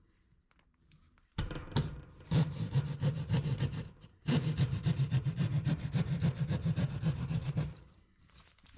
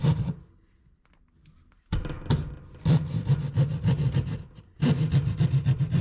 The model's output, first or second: first